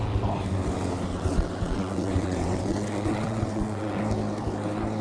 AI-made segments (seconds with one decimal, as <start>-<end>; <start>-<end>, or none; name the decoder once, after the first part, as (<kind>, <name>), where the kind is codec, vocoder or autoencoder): 1.1-4.0 (vocoder, WaveNeXt)